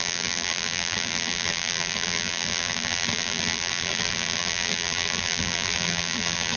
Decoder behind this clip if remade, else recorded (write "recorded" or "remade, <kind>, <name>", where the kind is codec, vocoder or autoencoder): remade, vocoder, BigVGAN v2